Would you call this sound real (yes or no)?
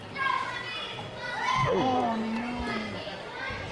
no